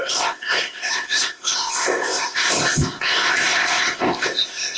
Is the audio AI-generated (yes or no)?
yes